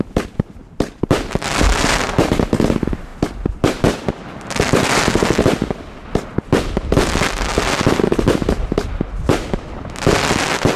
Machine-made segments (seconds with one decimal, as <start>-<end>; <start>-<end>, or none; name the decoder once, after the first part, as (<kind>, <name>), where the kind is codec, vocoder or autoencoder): none